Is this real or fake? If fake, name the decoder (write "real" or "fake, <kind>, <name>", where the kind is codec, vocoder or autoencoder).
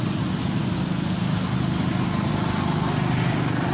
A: real